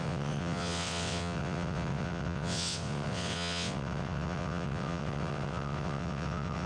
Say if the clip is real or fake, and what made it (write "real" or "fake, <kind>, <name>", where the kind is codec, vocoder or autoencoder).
fake, vocoder, WaveNeXt